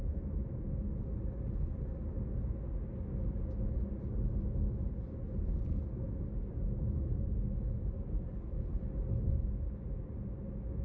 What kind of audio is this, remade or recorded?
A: recorded